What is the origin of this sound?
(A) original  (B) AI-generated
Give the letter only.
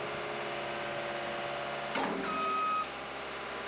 A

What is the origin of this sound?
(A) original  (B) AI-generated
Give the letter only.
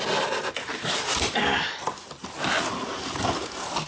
A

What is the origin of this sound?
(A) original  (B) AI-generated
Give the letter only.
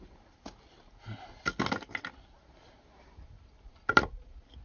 A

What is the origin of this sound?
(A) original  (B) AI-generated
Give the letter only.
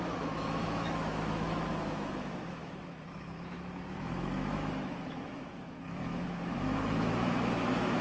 B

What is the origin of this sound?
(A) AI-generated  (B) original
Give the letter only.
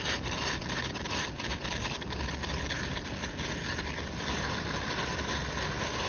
A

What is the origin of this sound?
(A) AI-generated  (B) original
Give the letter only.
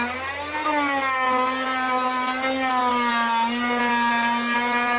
B